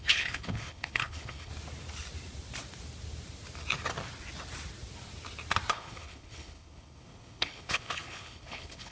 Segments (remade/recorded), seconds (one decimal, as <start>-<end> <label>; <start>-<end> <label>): 0.0-1.5 remade; 1.5-5.7 recorded; 5.7-8.9 remade